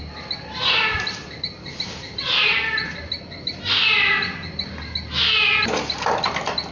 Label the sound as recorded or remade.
recorded